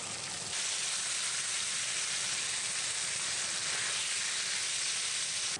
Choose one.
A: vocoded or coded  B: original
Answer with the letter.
B